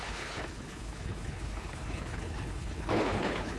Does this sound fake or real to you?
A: fake